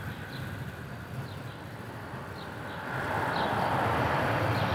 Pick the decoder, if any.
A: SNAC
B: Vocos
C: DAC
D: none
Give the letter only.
D